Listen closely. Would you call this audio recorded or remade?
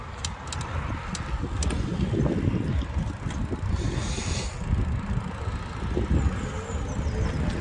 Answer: recorded